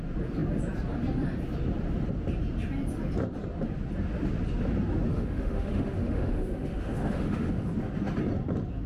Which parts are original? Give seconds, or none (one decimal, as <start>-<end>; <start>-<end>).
0.0-5.1; 7.7-8.9